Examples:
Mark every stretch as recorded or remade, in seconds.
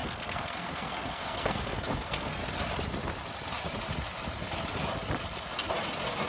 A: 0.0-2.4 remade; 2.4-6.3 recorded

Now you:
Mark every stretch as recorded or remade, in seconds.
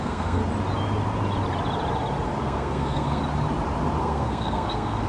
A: 0.0-0.4 remade; 0.4-2.4 recorded; 2.4-3.2 remade; 3.2-4.0 recorded; 4.0-5.1 remade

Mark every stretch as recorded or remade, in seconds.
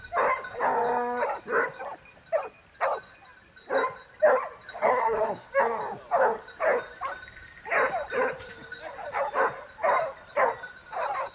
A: 0.0-4.8 recorded; 4.8-5.5 remade; 5.5-11.3 recorded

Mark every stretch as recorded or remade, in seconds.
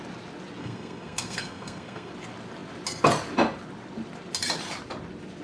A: 0.0-0.6 recorded; 0.6-2.1 remade; 2.1-5.4 recorded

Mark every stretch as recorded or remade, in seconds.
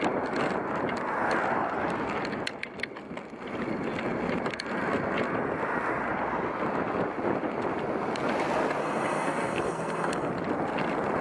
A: 0.0-8.8 recorded; 8.8-10.3 remade; 10.3-11.2 recorded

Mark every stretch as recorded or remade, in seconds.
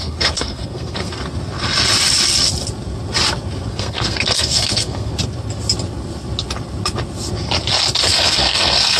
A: 0.0-1.2 remade; 1.2-3.7 recorded; 3.7-5.1 remade; 5.1-8.1 recorded; 8.1-9.0 remade